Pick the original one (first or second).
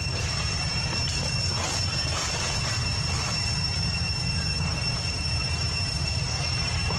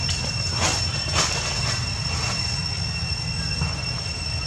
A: second